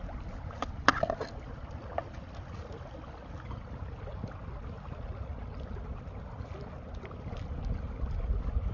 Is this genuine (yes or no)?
yes